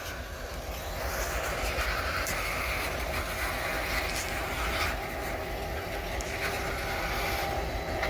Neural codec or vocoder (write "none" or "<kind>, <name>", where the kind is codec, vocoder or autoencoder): none